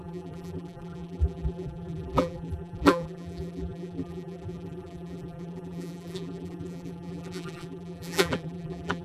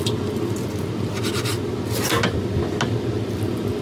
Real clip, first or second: second